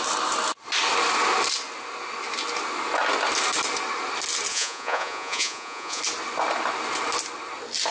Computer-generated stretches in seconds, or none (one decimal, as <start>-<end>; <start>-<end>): 4.5-6.0

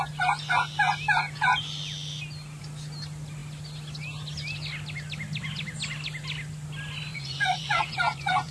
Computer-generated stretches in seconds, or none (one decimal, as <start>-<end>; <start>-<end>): 7.1-8.5